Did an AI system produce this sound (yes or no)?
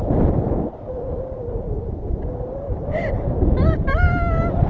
yes